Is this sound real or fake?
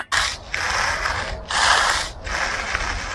real